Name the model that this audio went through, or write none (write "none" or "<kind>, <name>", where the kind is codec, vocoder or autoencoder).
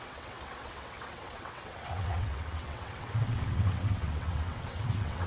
vocoder, WaveNeXt